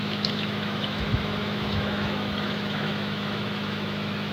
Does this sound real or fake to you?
fake